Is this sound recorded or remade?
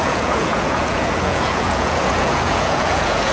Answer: remade